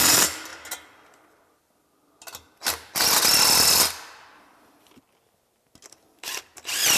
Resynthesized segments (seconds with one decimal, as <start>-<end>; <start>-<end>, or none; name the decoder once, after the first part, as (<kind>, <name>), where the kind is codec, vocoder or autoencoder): none